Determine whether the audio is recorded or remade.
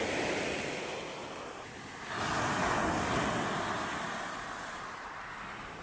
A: recorded